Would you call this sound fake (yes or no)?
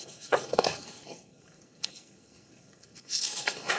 yes